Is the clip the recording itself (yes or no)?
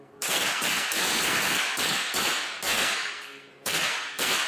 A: no